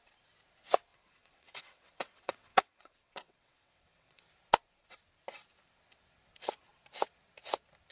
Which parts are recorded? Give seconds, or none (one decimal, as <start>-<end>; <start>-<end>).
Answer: 0.0-0.9; 4.2-7.9